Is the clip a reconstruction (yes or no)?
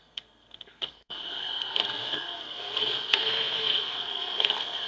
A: yes